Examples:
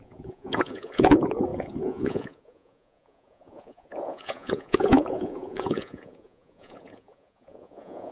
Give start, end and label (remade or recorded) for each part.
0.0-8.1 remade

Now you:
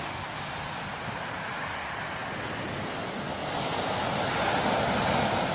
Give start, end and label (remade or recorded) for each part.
0.0-5.5 recorded

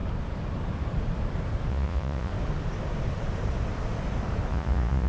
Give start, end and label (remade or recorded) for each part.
0.0-1.7 recorded; 1.7-2.3 remade; 2.3-4.5 recorded; 4.5-5.1 remade